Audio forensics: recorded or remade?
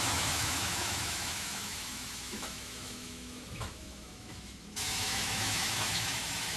remade